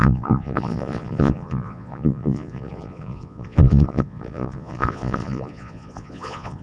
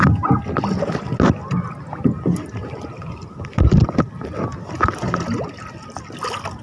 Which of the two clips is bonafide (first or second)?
second